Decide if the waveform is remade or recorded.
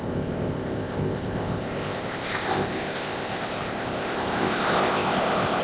remade